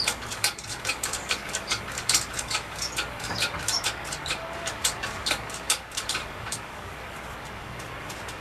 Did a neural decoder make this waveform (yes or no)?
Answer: yes